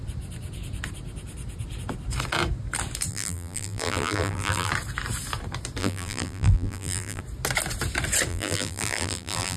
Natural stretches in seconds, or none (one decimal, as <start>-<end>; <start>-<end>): 0.0-3.1; 4.7-5.8; 7.2-8.3